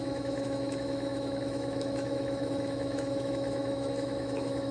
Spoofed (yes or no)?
yes